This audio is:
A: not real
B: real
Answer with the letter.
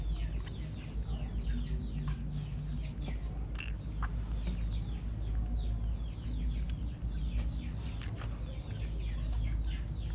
B